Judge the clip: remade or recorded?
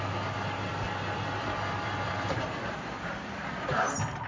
remade